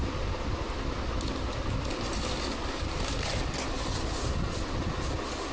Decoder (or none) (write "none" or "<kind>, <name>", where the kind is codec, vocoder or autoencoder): none